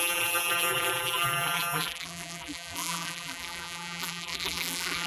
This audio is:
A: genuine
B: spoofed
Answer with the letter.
B